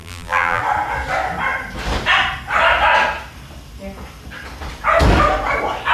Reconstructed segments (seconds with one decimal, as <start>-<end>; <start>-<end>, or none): 0.0-0.6